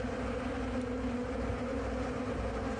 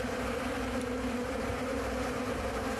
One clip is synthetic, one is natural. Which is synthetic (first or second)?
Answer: second